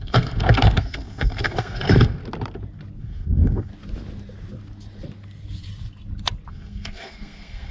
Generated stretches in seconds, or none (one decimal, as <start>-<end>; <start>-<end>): 0.0-2.2; 3.0-3.7; 6.5-7.7